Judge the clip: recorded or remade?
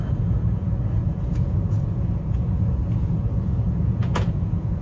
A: remade